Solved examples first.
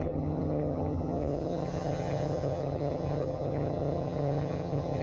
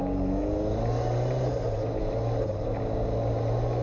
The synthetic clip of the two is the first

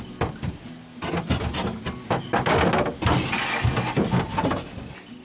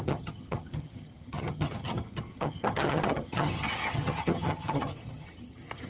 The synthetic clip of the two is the second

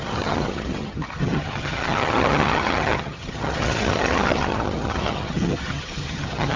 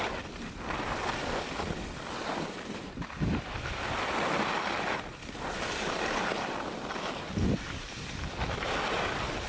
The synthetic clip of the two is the first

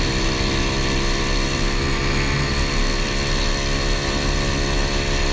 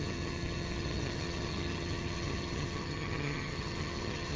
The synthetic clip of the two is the second